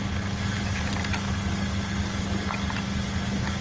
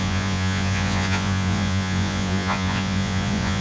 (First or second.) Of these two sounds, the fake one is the second